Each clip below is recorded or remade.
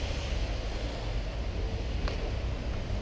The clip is recorded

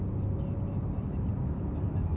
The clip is recorded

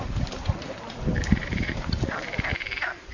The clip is remade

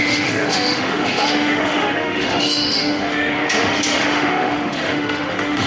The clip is remade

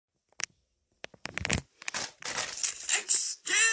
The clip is recorded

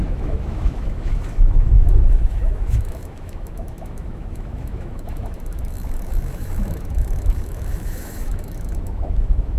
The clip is remade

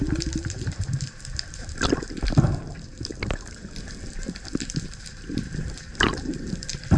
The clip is recorded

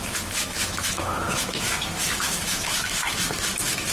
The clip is remade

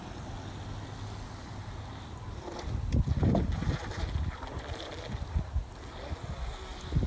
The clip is recorded